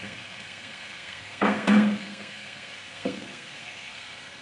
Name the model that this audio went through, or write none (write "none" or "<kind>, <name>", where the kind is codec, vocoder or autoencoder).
codec, SNAC